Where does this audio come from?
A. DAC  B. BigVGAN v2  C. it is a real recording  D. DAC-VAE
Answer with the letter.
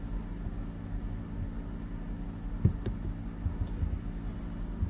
C